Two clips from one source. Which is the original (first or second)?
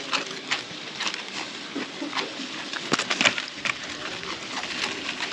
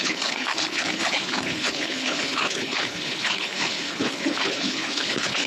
first